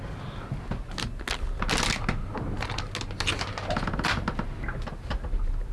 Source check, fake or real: real